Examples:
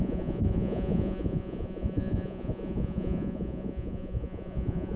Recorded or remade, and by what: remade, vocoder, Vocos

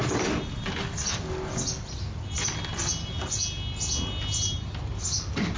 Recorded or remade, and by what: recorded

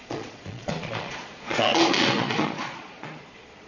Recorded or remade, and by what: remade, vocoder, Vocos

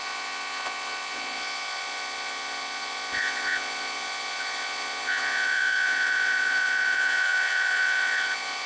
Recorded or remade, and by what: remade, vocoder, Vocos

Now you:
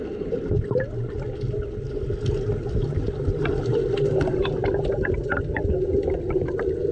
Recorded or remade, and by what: recorded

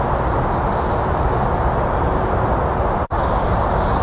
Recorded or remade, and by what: recorded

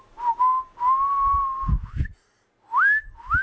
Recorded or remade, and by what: recorded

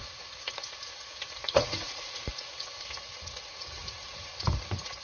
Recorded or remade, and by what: remade, vocoder, Vocos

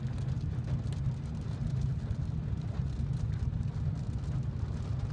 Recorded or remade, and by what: recorded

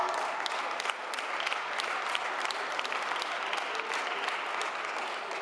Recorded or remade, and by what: recorded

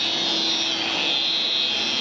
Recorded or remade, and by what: recorded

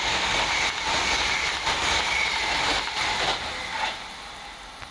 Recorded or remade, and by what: recorded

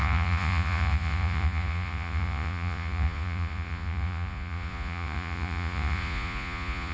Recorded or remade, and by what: remade, vocoder, Vocos